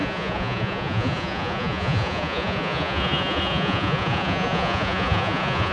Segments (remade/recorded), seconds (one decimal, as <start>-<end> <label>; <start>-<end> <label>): 0.0-5.7 remade